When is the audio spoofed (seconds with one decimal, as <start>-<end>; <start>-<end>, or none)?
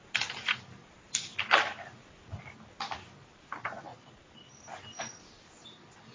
3.9-4.6